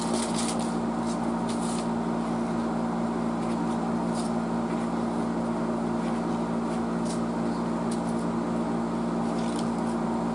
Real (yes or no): yes